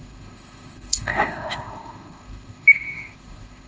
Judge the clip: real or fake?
fake